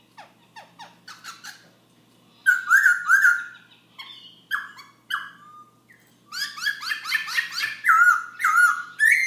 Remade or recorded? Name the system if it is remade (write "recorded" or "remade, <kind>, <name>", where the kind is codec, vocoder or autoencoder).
recorded